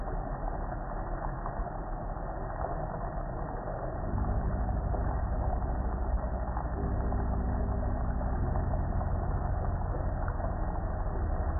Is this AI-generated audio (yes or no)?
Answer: no